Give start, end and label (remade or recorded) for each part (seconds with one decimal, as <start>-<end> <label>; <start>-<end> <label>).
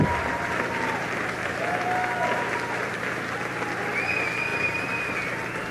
0.0-4.5 recorded; 4.5-5.0 remade; 5.0-5.7 recorded